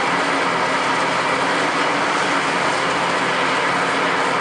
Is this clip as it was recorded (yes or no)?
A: yes